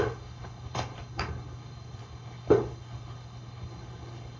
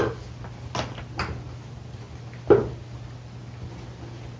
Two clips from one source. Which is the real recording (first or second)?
second